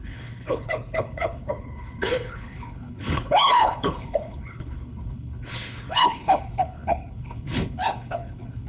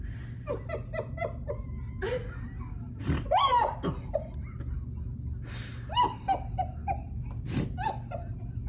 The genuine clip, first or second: second